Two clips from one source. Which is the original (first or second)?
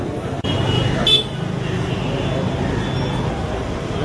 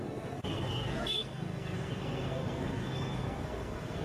first